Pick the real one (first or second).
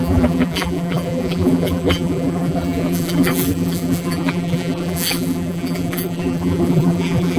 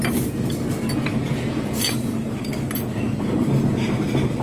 second